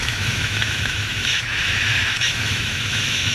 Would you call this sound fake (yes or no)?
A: yes